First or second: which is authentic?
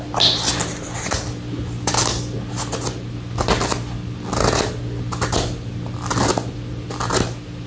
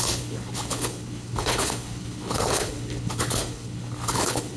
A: first